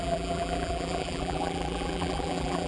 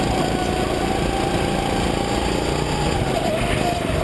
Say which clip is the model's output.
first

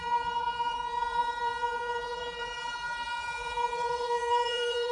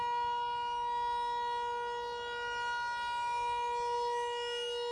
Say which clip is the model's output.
first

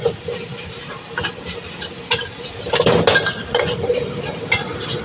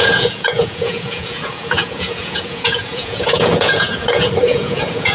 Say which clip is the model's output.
second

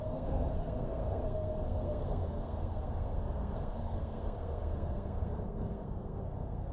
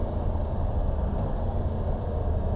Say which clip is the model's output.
first